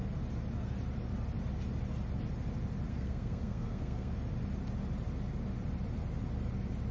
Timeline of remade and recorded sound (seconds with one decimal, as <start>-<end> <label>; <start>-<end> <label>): 0.0-2.9 recorded; 2.9-4.1 remade; 4.1-6.9 recorded